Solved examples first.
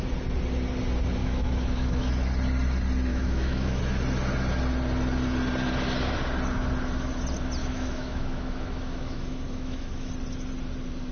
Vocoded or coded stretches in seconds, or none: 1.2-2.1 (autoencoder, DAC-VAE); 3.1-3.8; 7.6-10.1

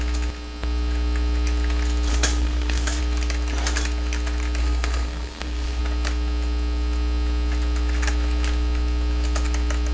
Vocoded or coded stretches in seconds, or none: 2.1-3.0 (codec, SNAC); 4.6-5.8

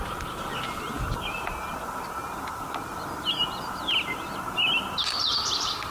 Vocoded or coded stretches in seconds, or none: none

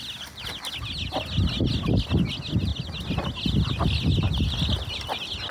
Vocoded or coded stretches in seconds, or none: none

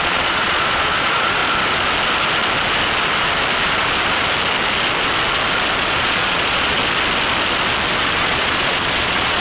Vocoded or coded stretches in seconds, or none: 0.0-1.4 (vocoder, Vocos); 5.8-6.8; 8.2-9.4

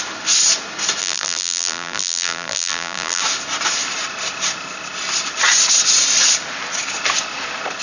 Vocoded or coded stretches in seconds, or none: 1.0-3.2 (vocoder, BigVGAN v2)